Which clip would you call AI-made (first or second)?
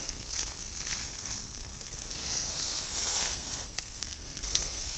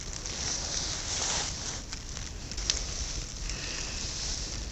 first